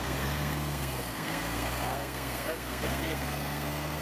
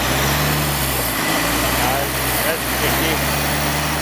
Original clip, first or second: second